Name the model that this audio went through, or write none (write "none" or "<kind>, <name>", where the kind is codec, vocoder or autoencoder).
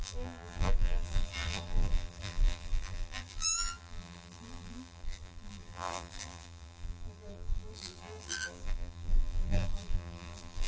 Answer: vocoder, BigVGAN v2